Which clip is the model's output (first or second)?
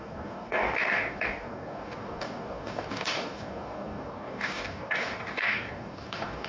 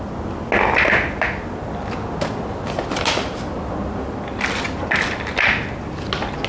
first